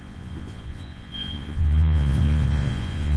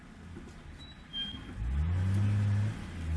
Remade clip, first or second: first